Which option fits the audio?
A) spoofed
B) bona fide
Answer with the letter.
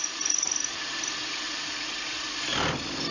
B